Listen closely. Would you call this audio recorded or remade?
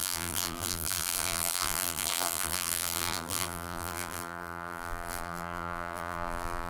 remade